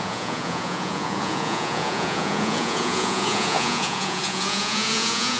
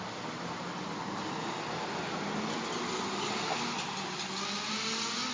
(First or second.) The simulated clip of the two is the first